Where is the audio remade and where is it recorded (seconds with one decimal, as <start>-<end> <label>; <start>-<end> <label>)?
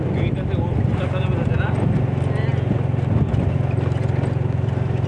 0.0-5.1 recorded